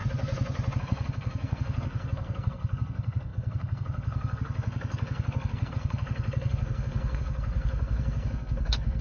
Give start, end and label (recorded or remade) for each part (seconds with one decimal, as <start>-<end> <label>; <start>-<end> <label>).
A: 0.0-0.8 recorded; 0.8-9.0 remade